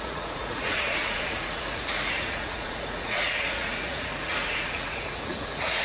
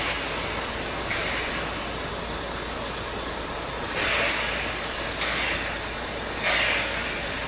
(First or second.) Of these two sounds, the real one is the second